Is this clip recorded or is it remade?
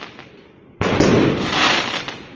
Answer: recorded